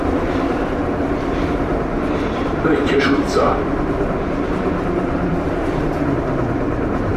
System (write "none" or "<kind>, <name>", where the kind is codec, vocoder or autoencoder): vocoder, BigVGAN v2